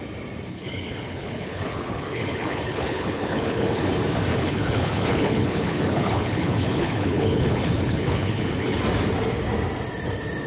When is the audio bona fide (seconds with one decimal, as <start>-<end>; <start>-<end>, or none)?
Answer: 0.0-0.5; 3.8-4.3; 8.8-10.5